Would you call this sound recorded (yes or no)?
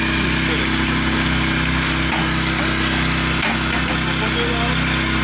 yes